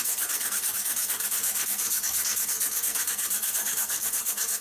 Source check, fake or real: fake